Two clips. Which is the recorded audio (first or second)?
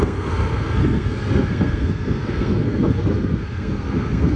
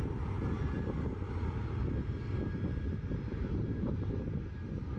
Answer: second